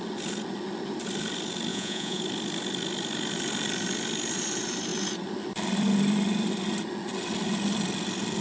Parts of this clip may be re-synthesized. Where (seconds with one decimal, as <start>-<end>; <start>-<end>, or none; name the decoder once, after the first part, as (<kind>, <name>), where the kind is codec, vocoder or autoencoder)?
1.7-2.2 (vocoder, Vocos)